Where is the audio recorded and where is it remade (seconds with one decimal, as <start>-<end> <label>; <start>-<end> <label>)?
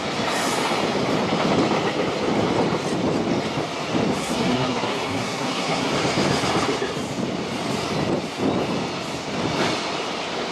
0.0-4.2 recorded; 4.2-5.9 remade; 5.9-10.5 recorded